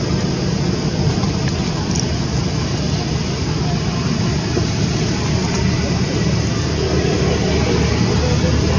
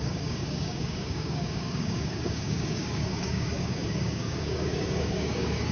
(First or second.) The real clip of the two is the first